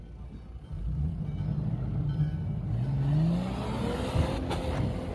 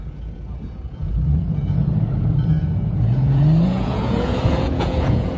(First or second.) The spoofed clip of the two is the second